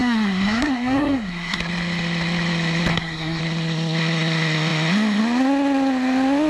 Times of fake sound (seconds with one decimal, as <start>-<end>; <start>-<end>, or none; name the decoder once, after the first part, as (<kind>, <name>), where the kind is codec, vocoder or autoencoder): 0.0-1.6 (codec, SNAC); 2.9-3.4